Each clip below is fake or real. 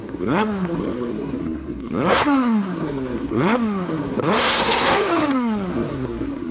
fake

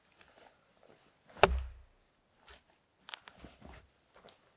real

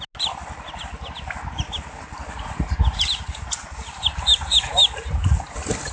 real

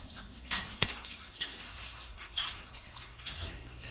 fake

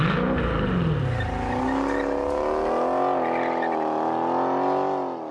real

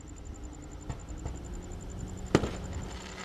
real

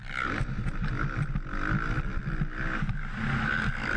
real